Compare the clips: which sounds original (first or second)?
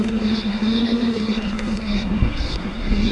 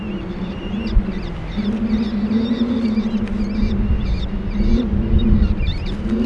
second